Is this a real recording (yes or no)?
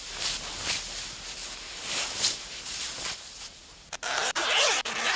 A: no